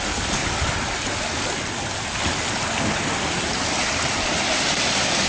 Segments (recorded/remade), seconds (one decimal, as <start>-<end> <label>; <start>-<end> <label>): 0.0-5.3 recorded